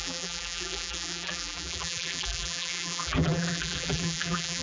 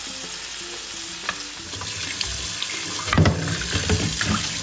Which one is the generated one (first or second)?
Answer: first